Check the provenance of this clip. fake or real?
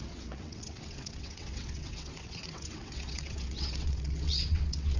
fake